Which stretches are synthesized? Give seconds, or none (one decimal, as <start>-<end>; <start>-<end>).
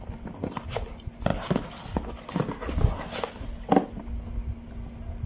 none